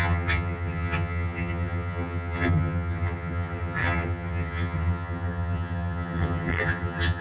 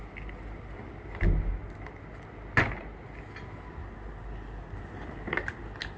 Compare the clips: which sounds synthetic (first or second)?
first